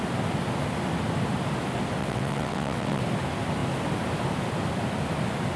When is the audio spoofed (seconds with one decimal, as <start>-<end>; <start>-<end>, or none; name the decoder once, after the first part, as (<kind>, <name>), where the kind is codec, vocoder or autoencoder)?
2.0-3.0 (vocoder, WaveNeXt)